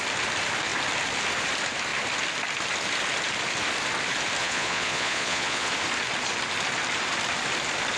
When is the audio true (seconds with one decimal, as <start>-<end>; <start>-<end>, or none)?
0.0-4.4; 5.7-8.0